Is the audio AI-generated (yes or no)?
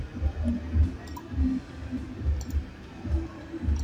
no